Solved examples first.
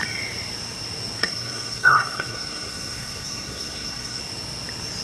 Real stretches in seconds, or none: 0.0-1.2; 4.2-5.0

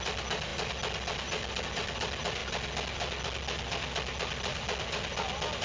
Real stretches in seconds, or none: 0.0-5.6

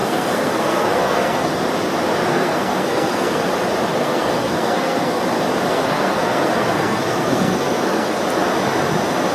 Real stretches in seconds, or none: 1.5-2.3; 3.5-3.9; 5.2-5.7; 8.2-9.3

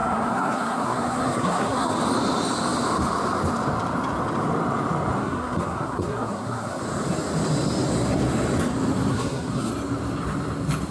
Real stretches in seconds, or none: 1.9-5.2; 6.8-9.1; 9.7-10.9

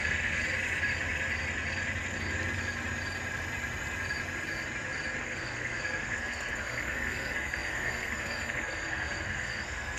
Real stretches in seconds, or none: 0.4-5.2

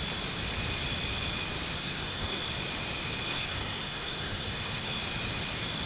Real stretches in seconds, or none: 0.0-1.8; 2.4-3.3; 4.9-5.9